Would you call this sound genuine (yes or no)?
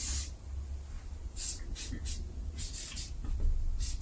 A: yes